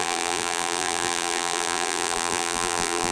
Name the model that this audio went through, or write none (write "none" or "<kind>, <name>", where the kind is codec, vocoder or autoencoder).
vocoder, BigVGAN v2